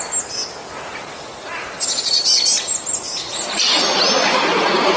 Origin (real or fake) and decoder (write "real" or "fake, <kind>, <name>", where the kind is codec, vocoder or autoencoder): real